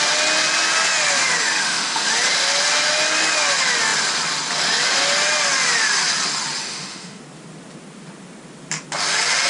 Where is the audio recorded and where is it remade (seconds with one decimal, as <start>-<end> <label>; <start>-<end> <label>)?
0.0-1.4 recorded; 1.4-2.1 remade; 2.1-6.6 recorded; 6.6-7.2 remade; 7.2-9.5 recorded